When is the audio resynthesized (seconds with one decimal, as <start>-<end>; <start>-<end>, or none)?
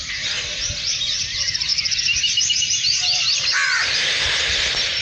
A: none